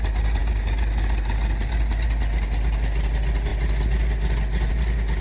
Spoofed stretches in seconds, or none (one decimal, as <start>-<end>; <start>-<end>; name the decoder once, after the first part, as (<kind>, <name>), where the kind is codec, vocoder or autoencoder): none